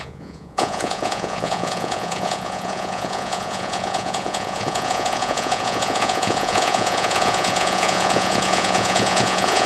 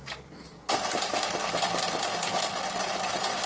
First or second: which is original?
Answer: second